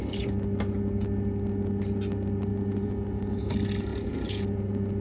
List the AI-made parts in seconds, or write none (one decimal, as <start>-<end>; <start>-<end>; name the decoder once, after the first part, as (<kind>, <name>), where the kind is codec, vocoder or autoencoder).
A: 2.5-3.5 (vocoder, Vocos); 3.9-5.0